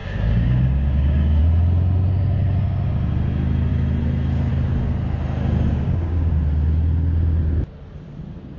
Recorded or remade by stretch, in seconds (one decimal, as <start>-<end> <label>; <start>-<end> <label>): 0.0-1.4 remade; 1.4-5.7 recorded; 5.7-6.3 remade; 6.3-8.6 recorded